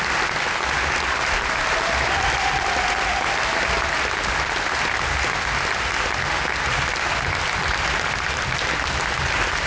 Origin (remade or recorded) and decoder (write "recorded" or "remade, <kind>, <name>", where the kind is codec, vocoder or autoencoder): recorded